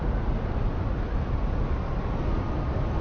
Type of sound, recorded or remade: recorded